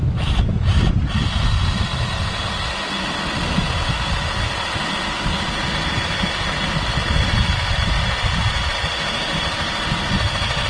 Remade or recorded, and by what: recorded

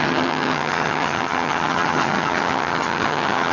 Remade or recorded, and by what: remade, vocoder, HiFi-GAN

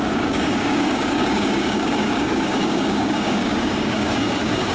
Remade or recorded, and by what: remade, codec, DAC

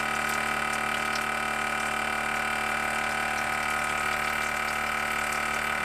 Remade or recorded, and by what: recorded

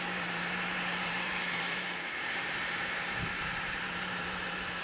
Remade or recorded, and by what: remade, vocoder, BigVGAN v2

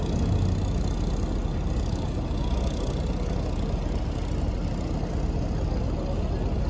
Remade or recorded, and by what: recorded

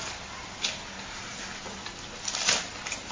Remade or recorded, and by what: recorded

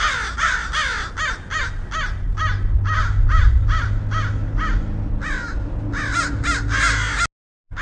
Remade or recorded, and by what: recorded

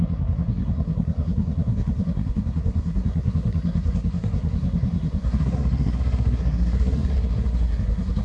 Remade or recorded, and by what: remade, codec, SNAC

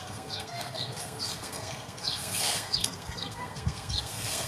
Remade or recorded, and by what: remade, codec, SNAC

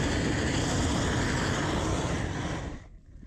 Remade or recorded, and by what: recorded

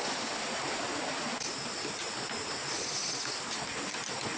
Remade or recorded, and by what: recorded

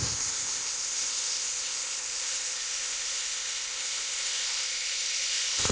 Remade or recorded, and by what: remade, codec, ZipCodec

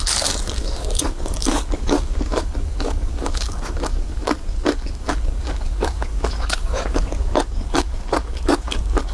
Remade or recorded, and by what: remade, codec, DAC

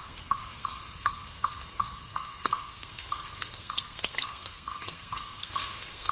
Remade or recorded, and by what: remade, codec, SNAC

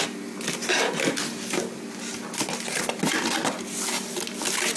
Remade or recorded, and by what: recorded